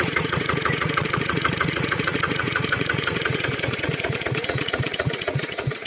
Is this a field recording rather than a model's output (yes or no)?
no